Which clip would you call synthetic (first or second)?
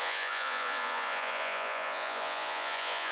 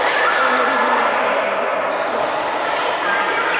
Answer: first